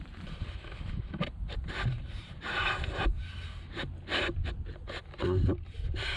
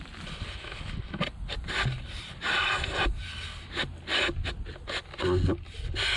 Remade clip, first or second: first